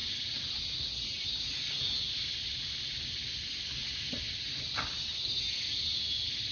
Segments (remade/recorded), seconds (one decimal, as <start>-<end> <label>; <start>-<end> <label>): 0.0-6.5 recorded

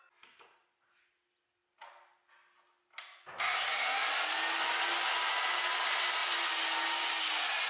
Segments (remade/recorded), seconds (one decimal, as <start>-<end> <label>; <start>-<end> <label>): 0.0-7.7 recorded

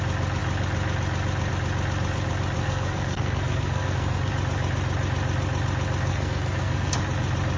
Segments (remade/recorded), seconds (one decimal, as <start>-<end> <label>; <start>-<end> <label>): 0.0-2.6 recorded; 2.6-4.3 remade; 4.3-6.1 recorded; 6.1-7.0 remade; 7.0-7.6 recorded

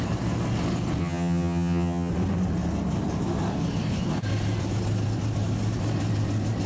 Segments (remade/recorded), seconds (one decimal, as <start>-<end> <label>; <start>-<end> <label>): 0.0-1.0 recorded; 1.0-2.1 remade; 2.1-6.7 recorded